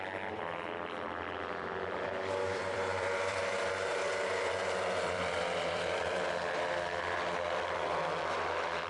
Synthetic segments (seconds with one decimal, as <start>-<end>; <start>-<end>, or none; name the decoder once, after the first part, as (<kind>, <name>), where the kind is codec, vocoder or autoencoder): 0.0-8.9 (vocoder, BigVGAN v2)